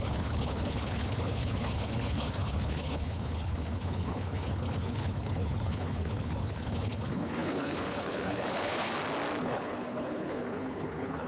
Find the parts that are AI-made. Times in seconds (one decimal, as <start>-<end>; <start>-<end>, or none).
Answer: 0.0-8.9; 9.4-11.3